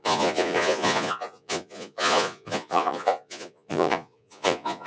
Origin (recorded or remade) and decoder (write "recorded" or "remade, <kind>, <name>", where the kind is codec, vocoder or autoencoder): remade, vocoder, Vocos